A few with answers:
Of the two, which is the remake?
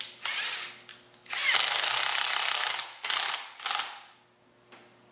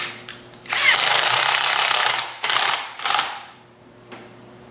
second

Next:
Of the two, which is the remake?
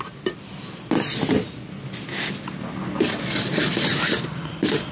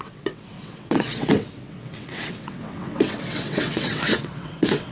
second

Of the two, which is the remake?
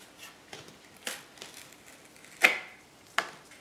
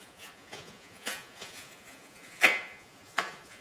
second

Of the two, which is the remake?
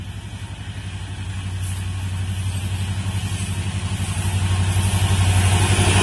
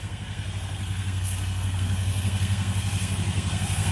second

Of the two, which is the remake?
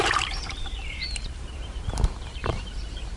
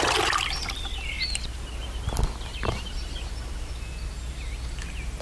first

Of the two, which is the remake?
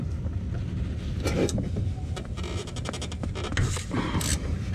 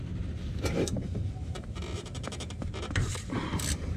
second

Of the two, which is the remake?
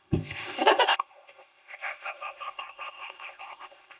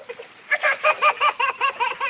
first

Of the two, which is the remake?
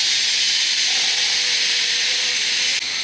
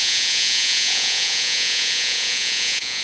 second